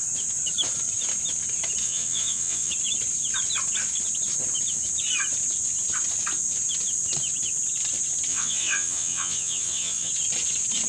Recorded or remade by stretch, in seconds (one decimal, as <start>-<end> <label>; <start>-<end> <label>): 0.0-1.8 recorded; 1.8-2.7 remade; 2.7-8.3 recorded; 8.3-10.1 remade; 10.1-10.9 recorded